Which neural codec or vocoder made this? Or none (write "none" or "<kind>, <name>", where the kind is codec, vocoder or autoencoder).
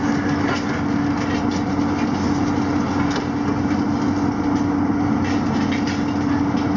none